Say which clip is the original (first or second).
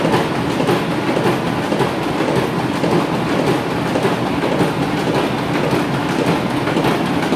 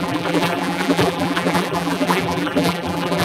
first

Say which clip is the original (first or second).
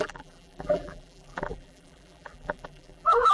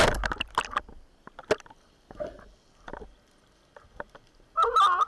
second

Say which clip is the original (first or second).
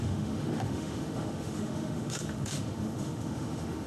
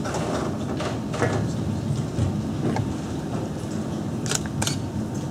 second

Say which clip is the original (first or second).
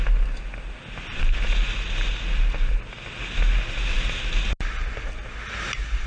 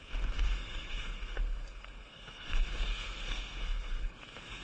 first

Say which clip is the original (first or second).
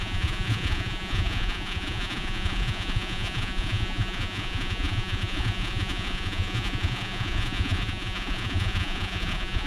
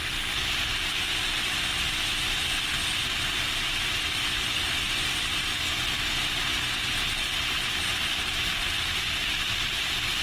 second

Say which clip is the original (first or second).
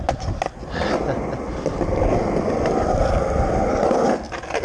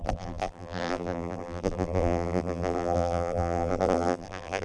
first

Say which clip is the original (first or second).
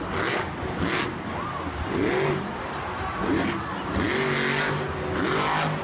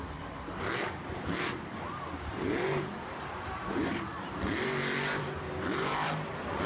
first